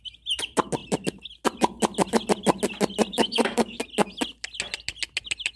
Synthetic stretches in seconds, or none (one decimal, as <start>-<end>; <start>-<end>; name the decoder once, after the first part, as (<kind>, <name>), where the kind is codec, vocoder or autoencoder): 3.1-3.8 (codec, DAC)